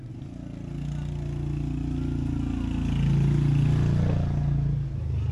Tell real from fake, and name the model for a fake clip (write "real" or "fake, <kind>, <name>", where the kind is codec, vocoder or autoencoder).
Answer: real